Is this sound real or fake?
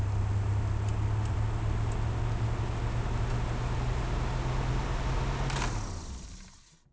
real